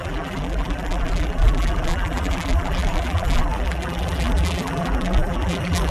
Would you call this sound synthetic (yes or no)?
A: yes